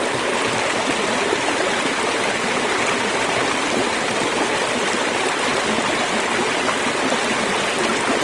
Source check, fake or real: real